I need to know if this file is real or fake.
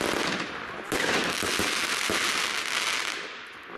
real